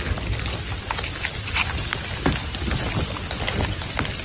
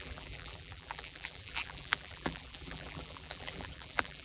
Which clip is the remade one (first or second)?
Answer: second